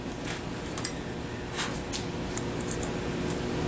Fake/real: real